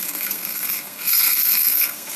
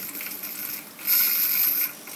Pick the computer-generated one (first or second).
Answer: first